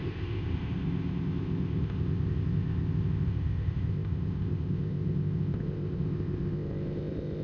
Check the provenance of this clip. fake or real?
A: fake